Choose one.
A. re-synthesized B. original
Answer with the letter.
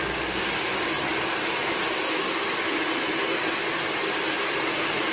B